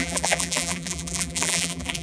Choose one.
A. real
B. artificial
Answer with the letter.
B